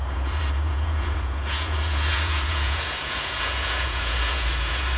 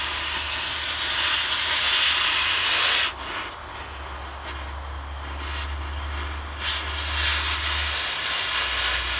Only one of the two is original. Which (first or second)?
second